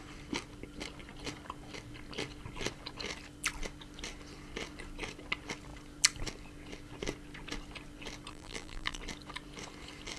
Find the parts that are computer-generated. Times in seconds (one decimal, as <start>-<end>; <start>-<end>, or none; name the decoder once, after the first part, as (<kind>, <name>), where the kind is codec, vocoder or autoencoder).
8.3-9.0 (vocoder, BigVGAN v2)